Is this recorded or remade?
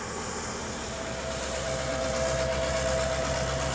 recorded